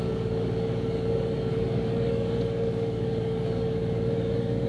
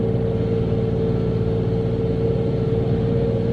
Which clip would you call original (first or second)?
second